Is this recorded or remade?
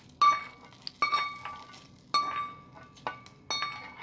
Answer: recorded